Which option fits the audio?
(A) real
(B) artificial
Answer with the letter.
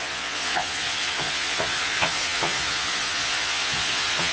B